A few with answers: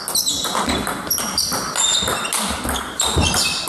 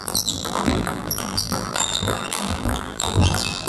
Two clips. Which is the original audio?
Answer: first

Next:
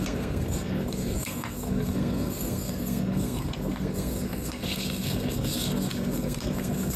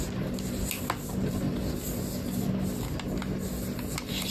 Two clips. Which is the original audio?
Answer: second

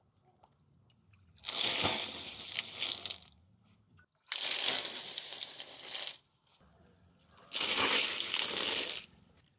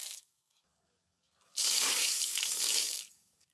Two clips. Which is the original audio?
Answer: first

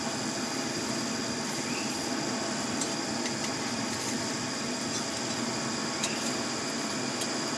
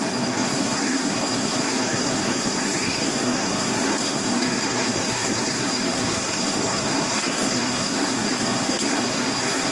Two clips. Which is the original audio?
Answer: first